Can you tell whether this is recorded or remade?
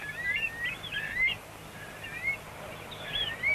recorded